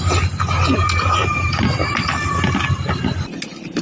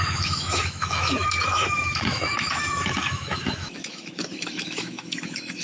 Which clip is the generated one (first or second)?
second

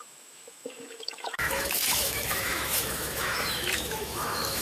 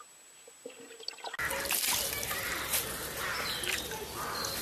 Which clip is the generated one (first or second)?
first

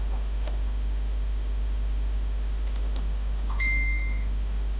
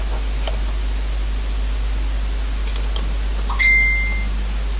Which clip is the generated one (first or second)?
first